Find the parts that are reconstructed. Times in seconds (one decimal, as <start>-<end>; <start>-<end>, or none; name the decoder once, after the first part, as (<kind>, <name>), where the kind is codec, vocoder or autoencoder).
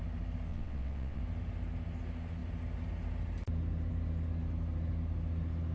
0.5-1.2 (vocoder, WaveNeXt)